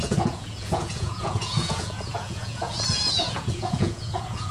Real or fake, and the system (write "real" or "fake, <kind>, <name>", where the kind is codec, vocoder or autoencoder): fake, vocoder, Vocos